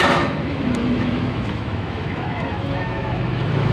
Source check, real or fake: fake